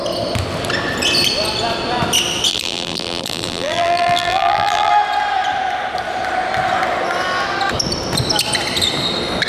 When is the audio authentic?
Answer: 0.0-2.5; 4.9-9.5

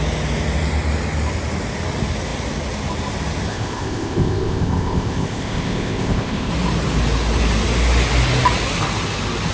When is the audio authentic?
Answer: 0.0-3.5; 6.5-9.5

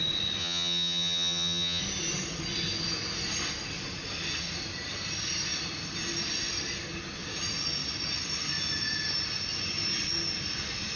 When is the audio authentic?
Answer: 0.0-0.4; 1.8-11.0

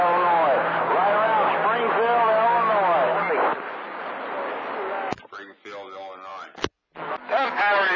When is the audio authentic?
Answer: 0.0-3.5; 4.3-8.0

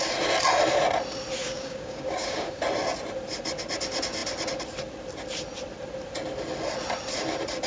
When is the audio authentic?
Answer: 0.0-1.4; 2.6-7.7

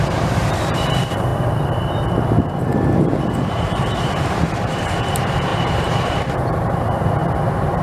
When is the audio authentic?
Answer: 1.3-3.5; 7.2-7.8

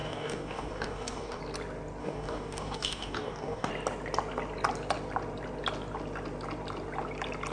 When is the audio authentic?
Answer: 1.4-2.0; 3.7-7.5

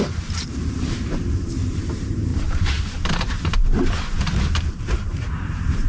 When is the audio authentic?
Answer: none